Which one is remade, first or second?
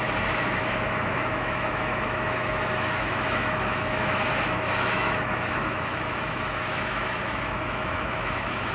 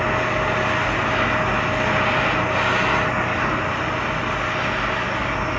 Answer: first